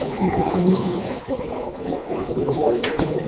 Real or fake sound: fake